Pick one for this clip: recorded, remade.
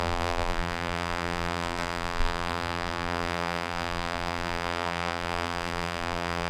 remade